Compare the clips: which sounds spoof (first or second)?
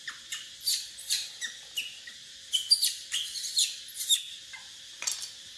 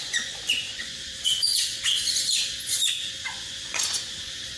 second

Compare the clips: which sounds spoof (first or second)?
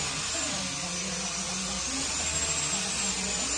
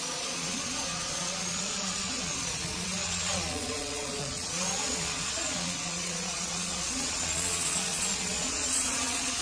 second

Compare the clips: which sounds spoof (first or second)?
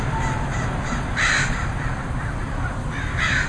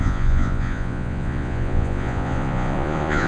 second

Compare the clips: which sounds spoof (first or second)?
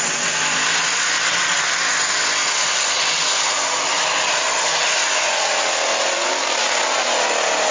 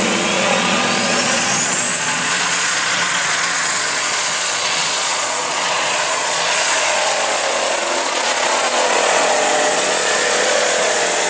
second